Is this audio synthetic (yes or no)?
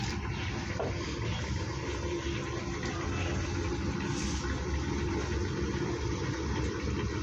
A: no